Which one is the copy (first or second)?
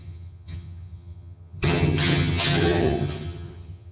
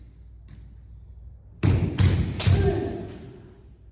first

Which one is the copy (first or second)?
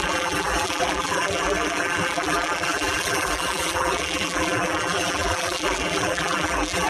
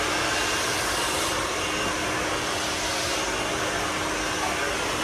first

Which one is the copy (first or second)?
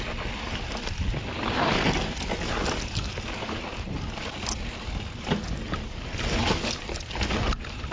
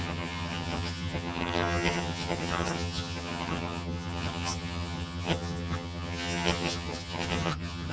second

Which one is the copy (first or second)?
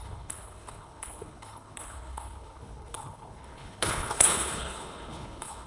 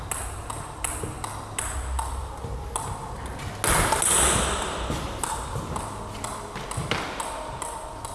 first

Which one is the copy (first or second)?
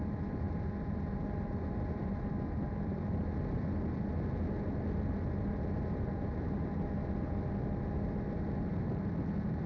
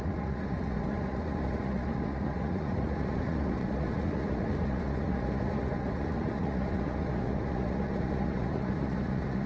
second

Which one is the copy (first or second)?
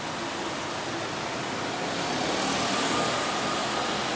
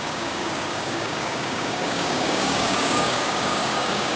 second